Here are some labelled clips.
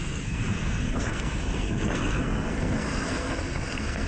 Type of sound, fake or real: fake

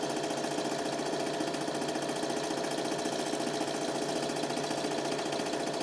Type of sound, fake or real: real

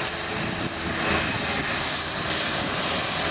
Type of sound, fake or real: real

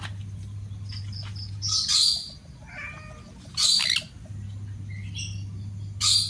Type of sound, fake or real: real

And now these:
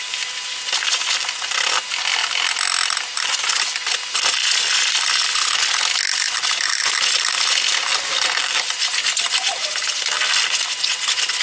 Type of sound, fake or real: real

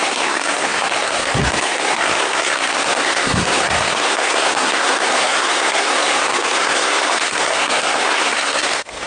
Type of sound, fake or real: fake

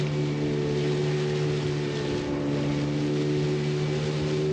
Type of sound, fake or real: real